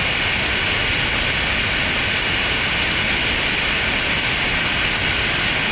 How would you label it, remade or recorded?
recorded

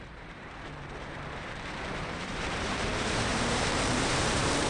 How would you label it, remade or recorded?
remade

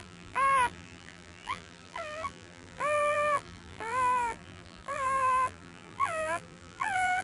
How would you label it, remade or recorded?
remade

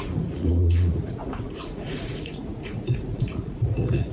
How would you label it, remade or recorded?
remade